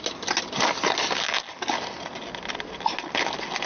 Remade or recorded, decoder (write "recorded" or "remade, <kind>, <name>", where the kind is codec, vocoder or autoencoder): recorded